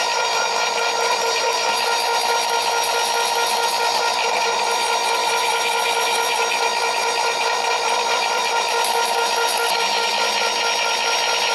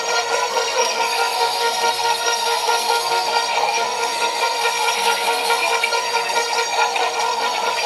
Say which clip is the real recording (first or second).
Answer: first